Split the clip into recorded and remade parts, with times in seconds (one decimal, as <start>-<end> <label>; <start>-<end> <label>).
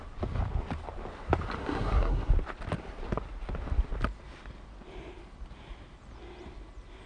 0.0-1.6 recorded; 1.6-2.3 remade; 2.3-7.1 recorded